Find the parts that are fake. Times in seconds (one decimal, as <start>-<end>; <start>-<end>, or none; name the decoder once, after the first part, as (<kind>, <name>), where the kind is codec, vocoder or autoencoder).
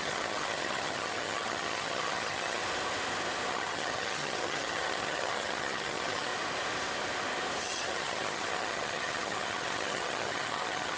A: 0.0-2.6 (vocoder, HiFi-GAN); 3.5-6.3; 7.6-11.0